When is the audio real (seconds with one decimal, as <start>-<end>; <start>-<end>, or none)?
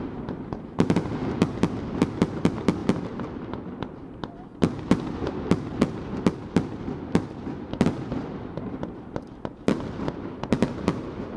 none